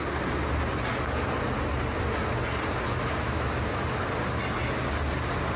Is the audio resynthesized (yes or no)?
no